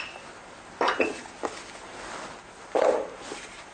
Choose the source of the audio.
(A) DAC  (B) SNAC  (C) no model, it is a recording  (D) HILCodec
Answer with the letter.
C